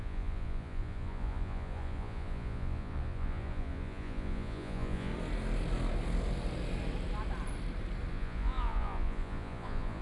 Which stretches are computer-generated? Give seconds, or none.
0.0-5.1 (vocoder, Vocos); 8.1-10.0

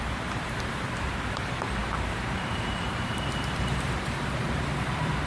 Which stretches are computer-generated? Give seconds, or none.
0.0-5.3 (vocoder, BigVGAN v2)

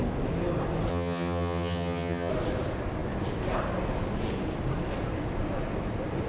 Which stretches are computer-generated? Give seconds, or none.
0.9-2.3 (vocoder, HiFi-GAN)

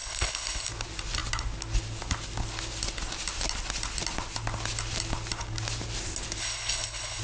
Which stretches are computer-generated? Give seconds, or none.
0.0-0.7 (codec, HILCodec); 6.4-7.2

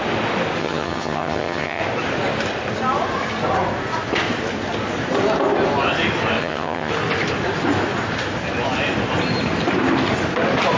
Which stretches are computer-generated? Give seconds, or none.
0.6-1.8 (vocoder, HiFi-GAN); 6.4-6.9

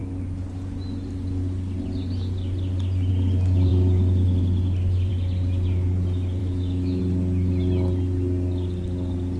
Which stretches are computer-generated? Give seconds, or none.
6.4-7.0 (autoencoder, DAC-VAE)

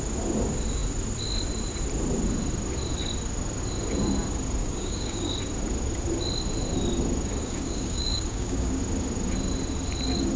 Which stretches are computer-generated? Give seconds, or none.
4.6-5.3 (codec, DAC); 7.4-8.8